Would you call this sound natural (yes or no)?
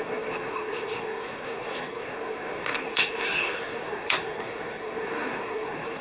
no